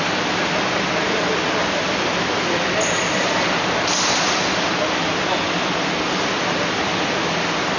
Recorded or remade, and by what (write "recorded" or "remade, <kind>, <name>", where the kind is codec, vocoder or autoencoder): recorded